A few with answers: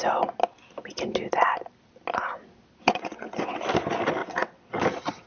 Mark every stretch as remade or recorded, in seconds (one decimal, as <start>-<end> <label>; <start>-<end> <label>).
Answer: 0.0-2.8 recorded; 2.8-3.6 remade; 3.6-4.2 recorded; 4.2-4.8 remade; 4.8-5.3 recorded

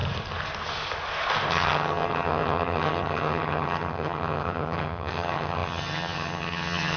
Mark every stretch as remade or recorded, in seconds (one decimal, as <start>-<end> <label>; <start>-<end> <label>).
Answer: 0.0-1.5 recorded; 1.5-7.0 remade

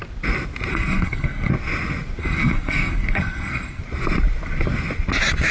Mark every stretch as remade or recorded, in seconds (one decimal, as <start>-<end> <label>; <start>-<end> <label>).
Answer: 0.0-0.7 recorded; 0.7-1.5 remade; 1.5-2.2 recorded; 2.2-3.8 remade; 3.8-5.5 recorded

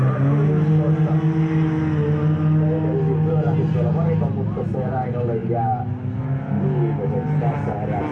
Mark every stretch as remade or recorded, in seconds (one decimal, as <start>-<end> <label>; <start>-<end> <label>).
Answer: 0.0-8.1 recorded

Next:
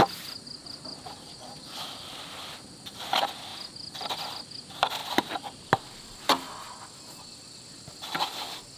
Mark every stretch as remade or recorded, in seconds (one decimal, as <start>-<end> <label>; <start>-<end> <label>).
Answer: 0.0-0.6 recorded; 0.6-2.8 remade; 2.8-3.5 recorded; 3.5-4.3 remade; 4.3-5.0 recorded; 5.0-6.2 remade; 6.2-8.8 recorded